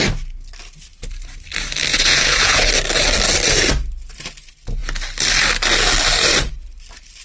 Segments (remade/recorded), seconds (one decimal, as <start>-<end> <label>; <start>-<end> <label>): 0.0-1.9 recorded; 1.9-2.7 remade; 2.7-7.2 recorded